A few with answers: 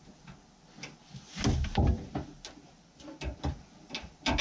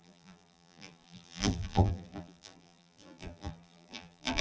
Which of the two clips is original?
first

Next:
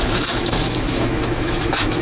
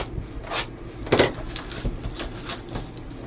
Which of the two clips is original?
second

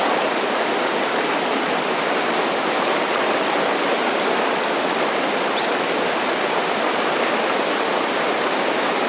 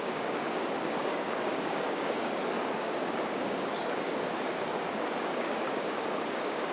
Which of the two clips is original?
first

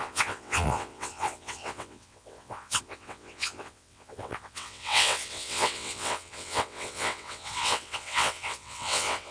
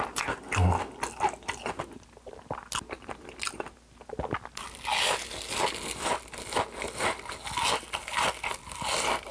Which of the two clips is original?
second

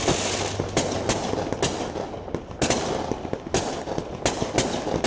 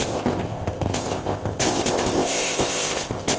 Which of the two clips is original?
first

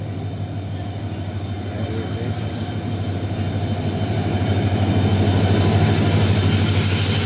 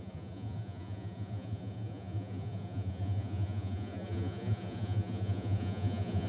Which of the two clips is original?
first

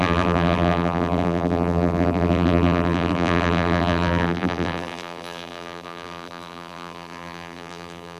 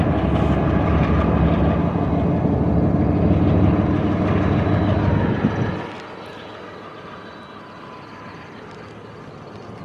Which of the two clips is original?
second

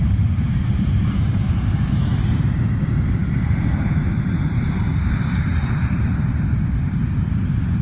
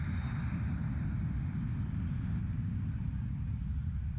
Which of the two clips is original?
second